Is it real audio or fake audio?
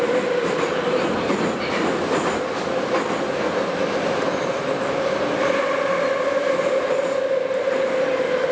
real